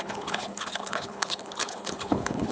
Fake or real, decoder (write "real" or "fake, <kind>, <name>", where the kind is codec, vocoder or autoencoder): fake, codec, HILCodec